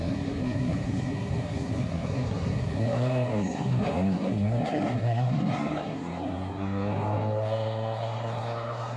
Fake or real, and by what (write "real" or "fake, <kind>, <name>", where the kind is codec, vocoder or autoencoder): fake, codec, SNAC